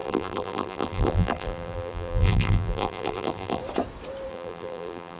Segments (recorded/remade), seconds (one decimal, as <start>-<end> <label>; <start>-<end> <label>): 0.0-3.6 remade; 3.6-4.3 recorded; 4.3-5.2 remade